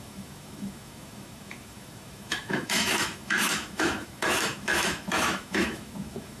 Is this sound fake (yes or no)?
yes